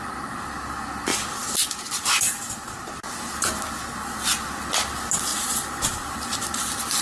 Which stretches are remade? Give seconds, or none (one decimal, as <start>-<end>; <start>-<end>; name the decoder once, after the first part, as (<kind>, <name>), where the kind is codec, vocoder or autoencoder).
5.3-6.5 (vocoder, BigVGAN v2)